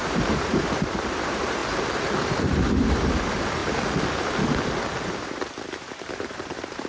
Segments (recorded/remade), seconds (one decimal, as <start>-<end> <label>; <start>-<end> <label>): 0.0-1.6 remade; 1.6-2.4 recorded; 2.4-3.6 remade; 3.6-5.0 recorded; 5.0-6.9 remade